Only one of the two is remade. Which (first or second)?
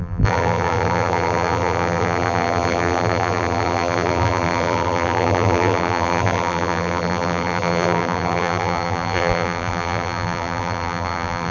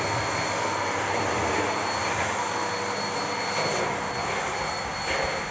first